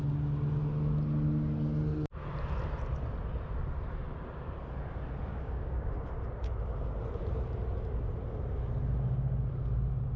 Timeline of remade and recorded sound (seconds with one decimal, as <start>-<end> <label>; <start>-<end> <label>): 0.0-5.3 recorded; 5.3-5.9 remade; 5.9-10.2 recorded